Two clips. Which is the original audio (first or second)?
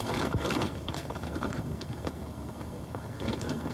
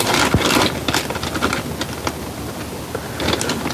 second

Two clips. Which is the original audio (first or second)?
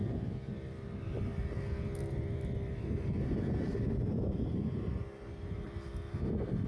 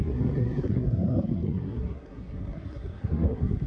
first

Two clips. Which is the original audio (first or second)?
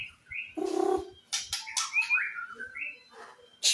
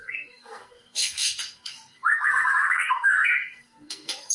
first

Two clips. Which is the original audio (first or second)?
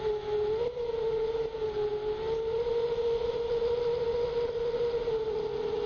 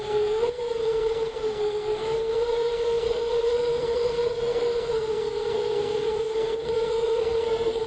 first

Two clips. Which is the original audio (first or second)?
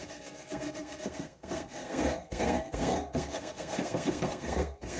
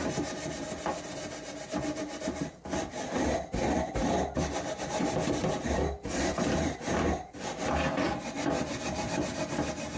second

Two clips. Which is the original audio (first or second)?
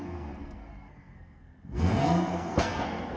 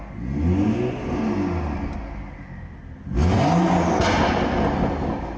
second